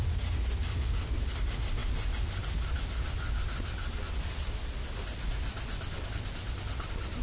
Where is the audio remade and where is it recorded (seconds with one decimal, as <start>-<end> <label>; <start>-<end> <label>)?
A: 0.0-7.2 recorded